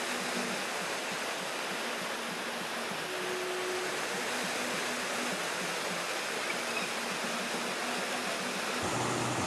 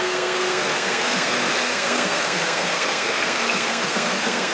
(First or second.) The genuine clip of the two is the first